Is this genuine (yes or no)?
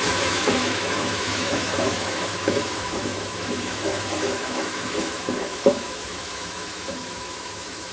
no